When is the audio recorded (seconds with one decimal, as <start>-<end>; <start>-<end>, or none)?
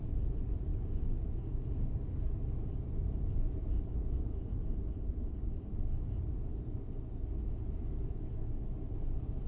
0.0-9.5